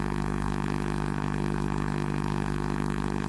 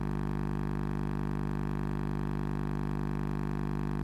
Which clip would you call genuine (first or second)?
second